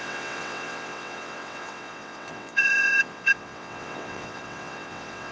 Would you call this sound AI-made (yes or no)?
yes